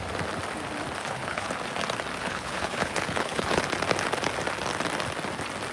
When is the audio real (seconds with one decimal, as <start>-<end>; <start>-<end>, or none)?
0.0-1.0; 1.5-2.2; 3.6-5.7